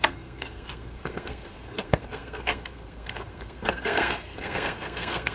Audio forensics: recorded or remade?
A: remade